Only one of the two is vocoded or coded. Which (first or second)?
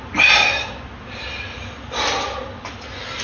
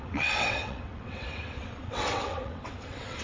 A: second